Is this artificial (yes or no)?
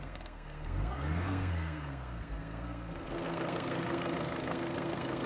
yes